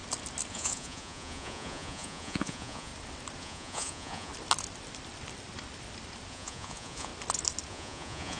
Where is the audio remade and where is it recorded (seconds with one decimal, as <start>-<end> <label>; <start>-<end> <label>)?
0.0-0.5 recorded; 0.5-2.9 remade; 2.9-3.4 recorded; 3.4-4.3 remade; 4.3-6.3 recorded; 6.3-7.1 remade; 7.1-7.7 recorded; 7.7-8.4 remade